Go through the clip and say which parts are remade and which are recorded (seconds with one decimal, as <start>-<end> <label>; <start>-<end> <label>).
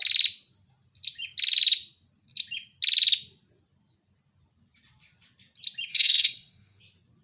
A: 0.0-5.9 recorded; 5.9-6.8 remade; 6.8-7.2 recorded